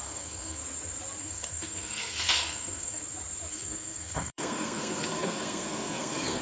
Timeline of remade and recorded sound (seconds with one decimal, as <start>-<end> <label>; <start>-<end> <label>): 0.0-0.6 remade; 0.6-1.2 recorded; 1.2-3.0 remade; 3.0-3.5 recorded; 3.5-6.4 remade